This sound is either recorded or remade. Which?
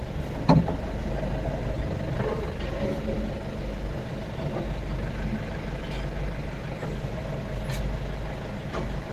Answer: recorded